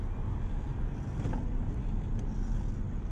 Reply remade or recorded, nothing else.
recorded